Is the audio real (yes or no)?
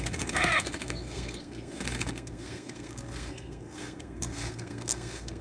no